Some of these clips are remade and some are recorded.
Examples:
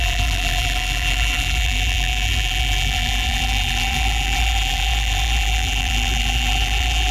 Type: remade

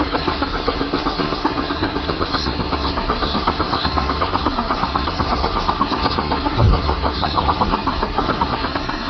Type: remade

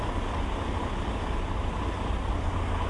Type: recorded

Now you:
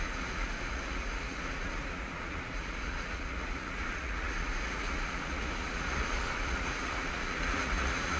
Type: remade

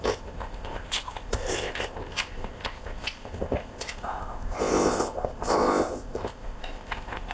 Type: remade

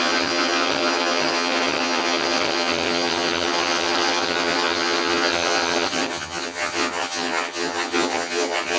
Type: remade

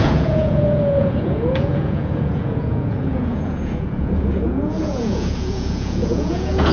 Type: remade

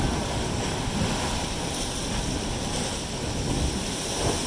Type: recorded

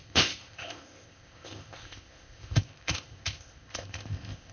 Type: remade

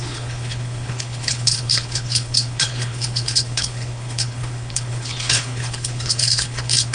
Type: remade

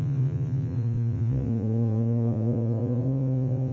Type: remade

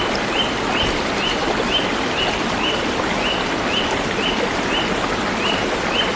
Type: recorded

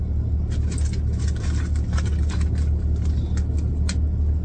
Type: recorded